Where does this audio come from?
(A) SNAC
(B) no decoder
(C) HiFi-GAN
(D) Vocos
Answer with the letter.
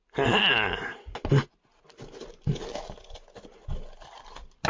B